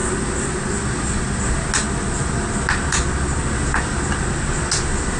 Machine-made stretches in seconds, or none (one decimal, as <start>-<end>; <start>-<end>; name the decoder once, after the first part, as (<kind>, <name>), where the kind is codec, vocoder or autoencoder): none